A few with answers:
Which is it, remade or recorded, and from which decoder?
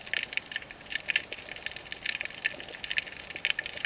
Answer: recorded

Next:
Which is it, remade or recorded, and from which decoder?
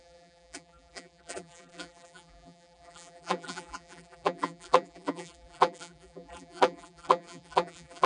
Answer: remade, vocoder, BigVGAN v2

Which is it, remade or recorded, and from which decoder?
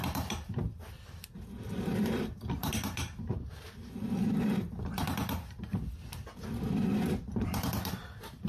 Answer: remade, vocoder, BigVGAN v2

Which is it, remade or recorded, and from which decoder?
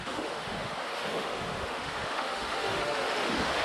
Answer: remade, autoencoder, DAC-VAE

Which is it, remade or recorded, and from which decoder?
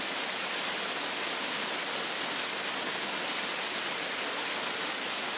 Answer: recorded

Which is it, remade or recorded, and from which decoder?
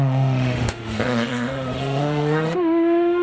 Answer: remade, autoencoder, DAC-VAE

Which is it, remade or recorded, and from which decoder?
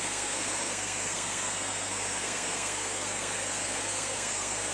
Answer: remade, codec, SNAC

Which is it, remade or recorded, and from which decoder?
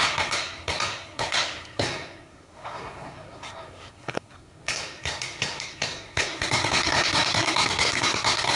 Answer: remade, codec, SNAC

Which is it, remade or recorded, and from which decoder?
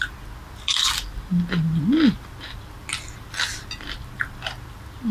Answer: recorded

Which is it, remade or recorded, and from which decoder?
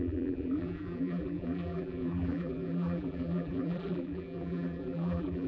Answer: remade, vocoder, BigVGAN v2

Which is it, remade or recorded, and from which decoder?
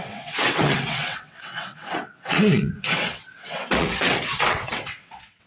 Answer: remade, vocoder, WaveNeXt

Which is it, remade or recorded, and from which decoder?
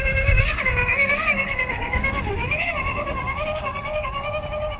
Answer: remade, codec, DAC